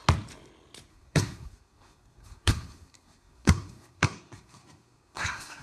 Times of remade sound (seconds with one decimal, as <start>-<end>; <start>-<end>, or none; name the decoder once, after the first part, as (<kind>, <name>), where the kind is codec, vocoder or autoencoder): 0.9-5.6 (codec, SNAC)

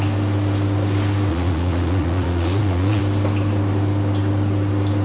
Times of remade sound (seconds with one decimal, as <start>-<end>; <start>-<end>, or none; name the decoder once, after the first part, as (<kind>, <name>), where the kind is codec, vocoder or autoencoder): 1.3-3.0 (vocoder, Vocos)

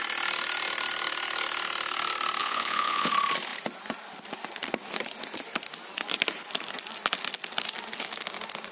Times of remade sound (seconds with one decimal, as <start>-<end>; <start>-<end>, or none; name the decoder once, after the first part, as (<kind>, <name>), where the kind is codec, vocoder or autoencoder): 2.4-3.1 (vocoder, Vocos)

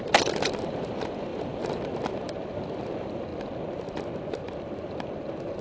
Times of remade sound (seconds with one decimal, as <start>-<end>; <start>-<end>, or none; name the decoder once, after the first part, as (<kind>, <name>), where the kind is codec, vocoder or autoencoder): 0.0-3.3 (vocoder, BigVGAN v2); 4.4-5.6

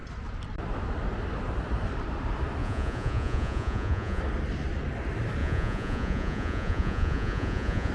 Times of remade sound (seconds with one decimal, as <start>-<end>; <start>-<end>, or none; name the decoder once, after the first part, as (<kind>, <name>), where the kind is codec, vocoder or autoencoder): 2.6-4.2 (vocoder, Vocos); 5.4-7.9

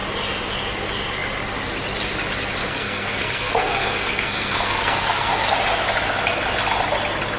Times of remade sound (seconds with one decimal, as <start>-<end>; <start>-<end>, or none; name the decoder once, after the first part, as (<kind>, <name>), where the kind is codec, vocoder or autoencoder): 2.6-5.5 (codec, SNAC)

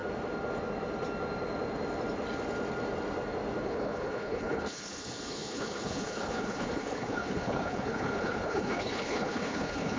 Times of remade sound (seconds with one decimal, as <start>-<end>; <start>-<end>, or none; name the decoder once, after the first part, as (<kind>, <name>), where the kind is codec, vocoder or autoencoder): 3.6-10.0 (codec, HILCodec)